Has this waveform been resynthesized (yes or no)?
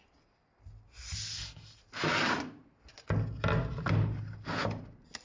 no